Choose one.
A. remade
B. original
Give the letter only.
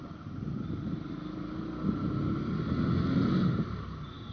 B